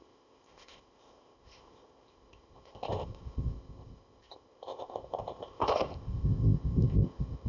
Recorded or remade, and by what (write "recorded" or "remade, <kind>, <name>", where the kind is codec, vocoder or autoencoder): remade, codec, ZipCodec